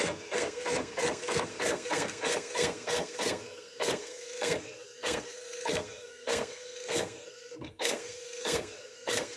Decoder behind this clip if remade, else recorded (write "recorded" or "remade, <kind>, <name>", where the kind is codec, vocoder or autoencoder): remade, codec, SNAC